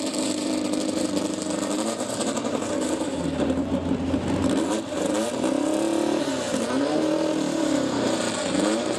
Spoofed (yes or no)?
yes